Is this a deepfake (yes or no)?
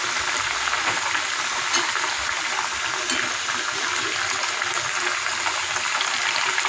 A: no